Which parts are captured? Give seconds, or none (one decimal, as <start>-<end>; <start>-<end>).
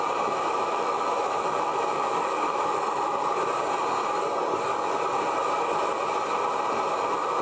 0.0-0.5; 3.1-7.4